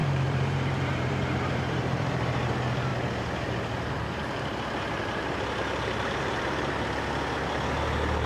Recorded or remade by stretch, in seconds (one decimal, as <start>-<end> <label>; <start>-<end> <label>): 0.0-2.5 remade; 2.5-8.3 recorded